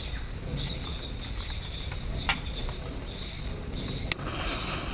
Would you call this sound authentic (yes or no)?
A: yes